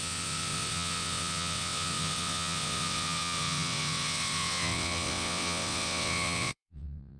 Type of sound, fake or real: fake